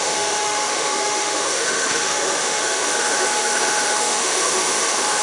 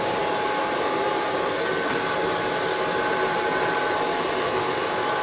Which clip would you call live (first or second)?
second